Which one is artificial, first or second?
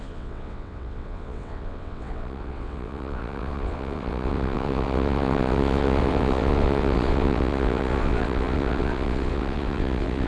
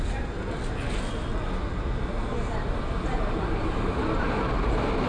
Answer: first